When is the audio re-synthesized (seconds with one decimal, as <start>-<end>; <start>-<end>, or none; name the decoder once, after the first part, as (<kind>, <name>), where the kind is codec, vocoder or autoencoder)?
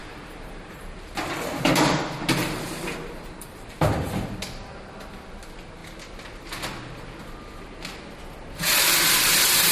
0.0-4.4 (vocoder, BigVGAN v2)